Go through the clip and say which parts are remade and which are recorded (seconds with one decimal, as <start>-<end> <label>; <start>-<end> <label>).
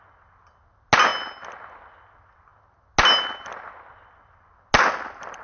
0.0-5.4 recorded